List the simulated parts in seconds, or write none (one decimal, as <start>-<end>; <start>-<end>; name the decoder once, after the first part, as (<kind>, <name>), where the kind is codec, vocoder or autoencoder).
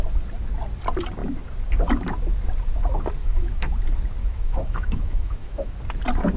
3.2-3.7 (autoencoder, DAC-VAE); 4.2-5.7